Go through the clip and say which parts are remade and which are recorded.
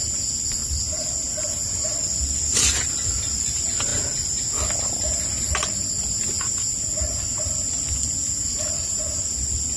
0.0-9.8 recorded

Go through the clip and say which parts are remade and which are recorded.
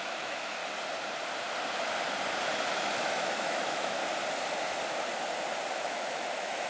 0.0-0.6 remade; 0.6-2.8 recorded; 2.8-4.0 remade; 4.0-5.7 recorded; 5.7-6.7 remade